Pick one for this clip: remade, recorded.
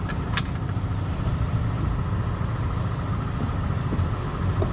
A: recorded